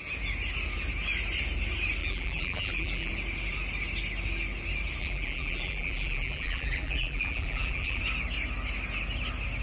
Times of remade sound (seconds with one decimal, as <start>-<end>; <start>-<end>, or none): 2.0-3.1; 5.0-8.0